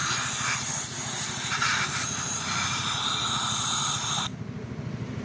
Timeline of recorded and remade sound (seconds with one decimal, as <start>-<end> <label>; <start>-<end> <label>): 0.0-5.2 recorded